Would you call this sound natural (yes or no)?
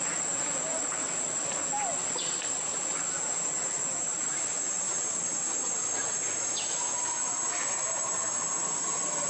yes